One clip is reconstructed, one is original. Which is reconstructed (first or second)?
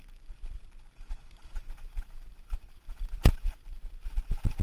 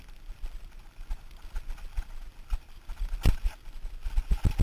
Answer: first